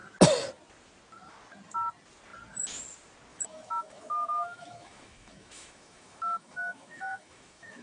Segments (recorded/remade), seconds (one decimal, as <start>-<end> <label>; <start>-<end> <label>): 0.0-3.3 recorded; 3.3-7.8 remade